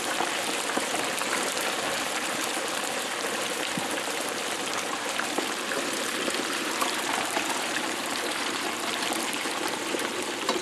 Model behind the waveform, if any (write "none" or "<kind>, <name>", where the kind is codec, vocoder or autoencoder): vocoder, BigVGAN v2